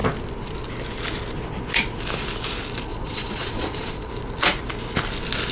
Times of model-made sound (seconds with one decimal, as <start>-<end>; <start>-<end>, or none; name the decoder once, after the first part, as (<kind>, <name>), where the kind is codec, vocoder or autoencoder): 2.9-4.1 (vocoder, Vocos)